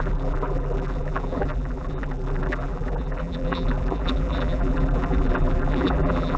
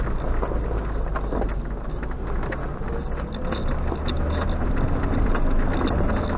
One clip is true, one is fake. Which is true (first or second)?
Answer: second